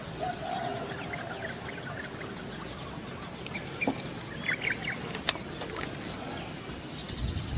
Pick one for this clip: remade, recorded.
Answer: recorded